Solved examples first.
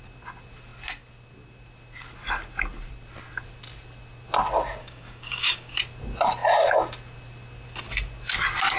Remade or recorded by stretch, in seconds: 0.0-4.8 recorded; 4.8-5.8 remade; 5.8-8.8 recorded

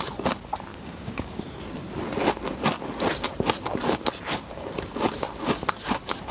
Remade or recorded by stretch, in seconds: 0.0-0.7 recorded; 0.7-1.4 remade; 1.4-6.3 recorded

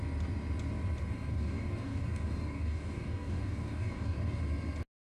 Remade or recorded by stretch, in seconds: 0.0-1.3 recorded; 1.3-4.4 remade; 4.4-5.2 recorded

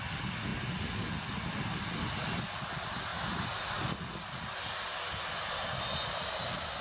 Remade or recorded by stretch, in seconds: 0.0-6.8 recorded